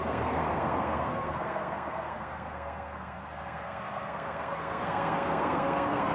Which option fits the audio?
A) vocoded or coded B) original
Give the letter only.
A